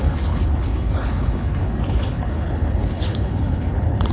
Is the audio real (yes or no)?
no